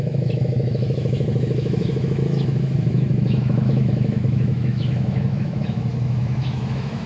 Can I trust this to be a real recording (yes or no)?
no